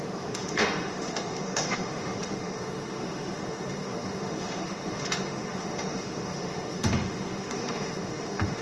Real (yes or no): no